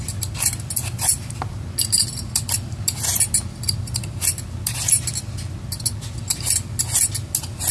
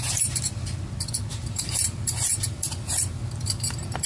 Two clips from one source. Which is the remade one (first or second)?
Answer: second